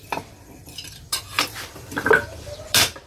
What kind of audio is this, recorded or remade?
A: remade